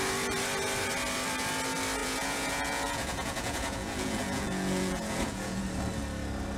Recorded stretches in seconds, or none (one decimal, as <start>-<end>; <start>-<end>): 0.0-2.0; 5.6-6.6